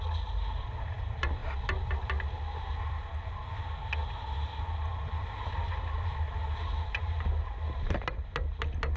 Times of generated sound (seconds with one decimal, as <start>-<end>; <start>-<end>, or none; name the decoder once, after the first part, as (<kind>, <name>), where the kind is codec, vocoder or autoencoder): none